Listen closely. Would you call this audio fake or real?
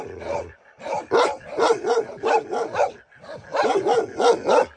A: real